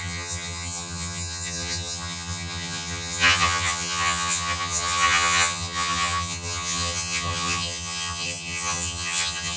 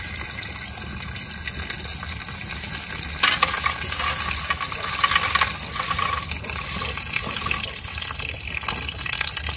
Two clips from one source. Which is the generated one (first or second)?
first